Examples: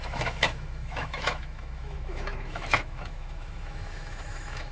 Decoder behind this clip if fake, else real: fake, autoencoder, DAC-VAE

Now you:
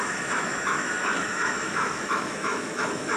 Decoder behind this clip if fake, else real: fake, autoencoder, DAC-VAE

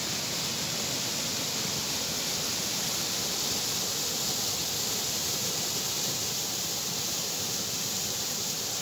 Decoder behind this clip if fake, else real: real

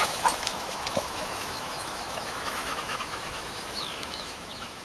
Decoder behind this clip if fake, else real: fake, autoencoder, DAC-VAE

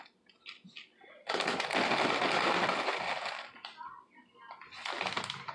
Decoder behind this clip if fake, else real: real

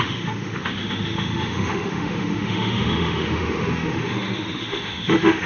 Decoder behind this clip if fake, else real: fake, autoencoder, DAC-VAE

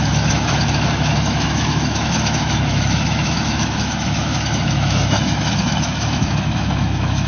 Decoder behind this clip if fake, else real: fake, autoencoder, DAC-VAE